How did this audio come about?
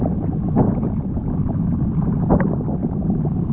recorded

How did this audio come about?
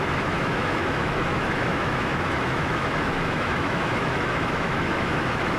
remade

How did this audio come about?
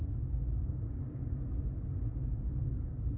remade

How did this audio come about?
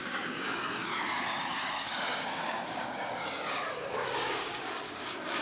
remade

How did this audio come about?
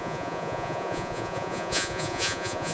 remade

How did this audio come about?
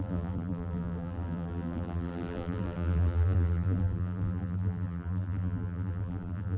remade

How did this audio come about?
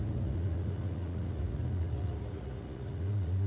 remade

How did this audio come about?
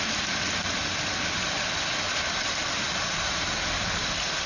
recorded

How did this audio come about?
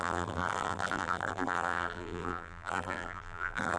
remade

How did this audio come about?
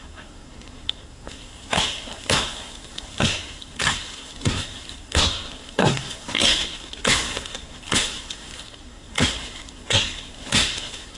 remade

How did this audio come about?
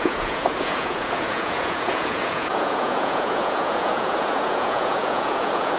remade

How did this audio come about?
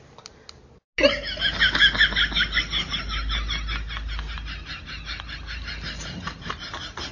recorded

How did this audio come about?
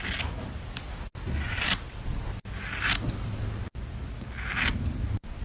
recorded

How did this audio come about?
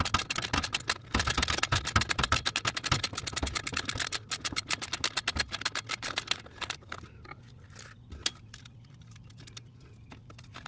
recorded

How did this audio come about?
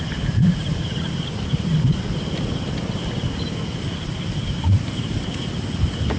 recorded